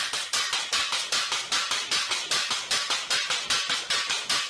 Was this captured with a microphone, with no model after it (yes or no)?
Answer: yes